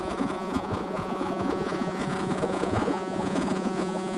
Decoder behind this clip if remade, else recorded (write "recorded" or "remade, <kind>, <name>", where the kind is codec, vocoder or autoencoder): remade, vocoder, Vocos